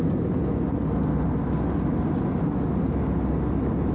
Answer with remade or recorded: recorded